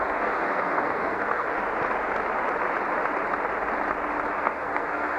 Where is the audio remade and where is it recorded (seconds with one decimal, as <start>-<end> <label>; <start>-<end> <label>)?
0.0-1.6 remade; 1.6-4.3 recorded; 4.3-5.2 remade